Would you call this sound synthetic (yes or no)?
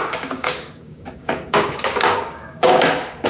yes